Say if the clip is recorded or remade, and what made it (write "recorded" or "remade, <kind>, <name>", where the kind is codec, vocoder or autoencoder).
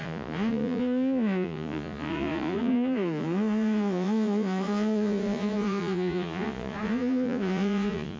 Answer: remade, vocoder, Vocos